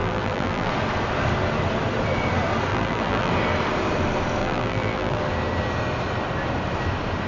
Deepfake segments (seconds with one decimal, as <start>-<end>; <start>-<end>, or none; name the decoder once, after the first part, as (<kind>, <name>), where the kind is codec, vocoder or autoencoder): 0.0-0.7 (vocoder, BigVGAN v2); 2.7-3.3; 4.4-5.2